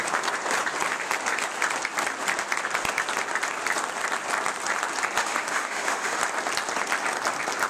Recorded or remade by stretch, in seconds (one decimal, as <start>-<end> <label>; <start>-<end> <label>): 0.0-5.2 recorded; 5.2-6.2 remade; 6.2-7.7 recorded